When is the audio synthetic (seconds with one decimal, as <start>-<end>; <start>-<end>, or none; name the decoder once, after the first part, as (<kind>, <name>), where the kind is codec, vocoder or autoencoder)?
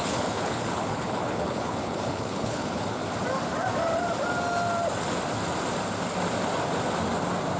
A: 0.0-3.0 (codec, HILCodec)